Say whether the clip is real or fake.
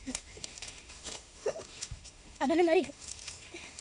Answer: fake